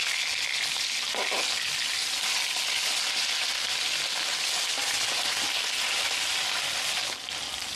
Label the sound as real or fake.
real